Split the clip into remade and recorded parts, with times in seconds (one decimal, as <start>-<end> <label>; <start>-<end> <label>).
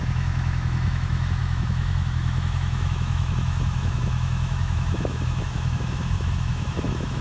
0.0-7.2 remade